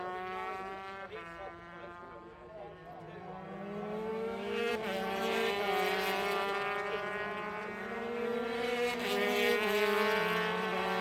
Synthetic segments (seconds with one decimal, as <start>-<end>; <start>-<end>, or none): 4.1-4.7